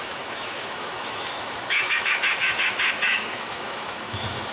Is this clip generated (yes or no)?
yes